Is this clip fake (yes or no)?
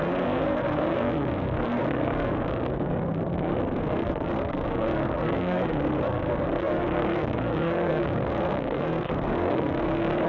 yes